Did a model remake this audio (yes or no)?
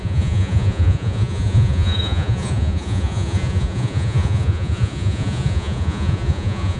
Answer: yes